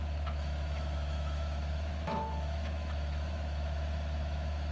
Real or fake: fake